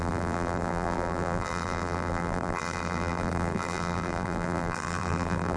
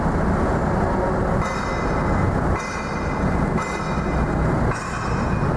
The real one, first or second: second